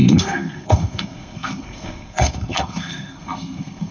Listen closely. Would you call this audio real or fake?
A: fake